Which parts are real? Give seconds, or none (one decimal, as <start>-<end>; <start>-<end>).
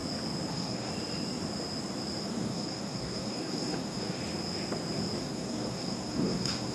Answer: 0.0-0.5; 0.9-2.3; 4.2-5.2